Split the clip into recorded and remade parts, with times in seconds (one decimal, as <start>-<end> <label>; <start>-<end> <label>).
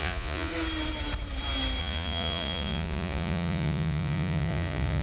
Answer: 0.0-0.5 remade; 0.5-1.8 recorded; 1.8-5.0 remade